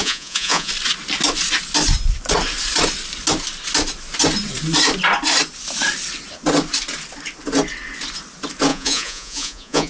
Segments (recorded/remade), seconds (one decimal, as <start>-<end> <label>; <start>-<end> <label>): 0.0-0.7 remade; 0.7-8.7 recorded; 8.7-9.9 remade